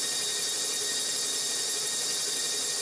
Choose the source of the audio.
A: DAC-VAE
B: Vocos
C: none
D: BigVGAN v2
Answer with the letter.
C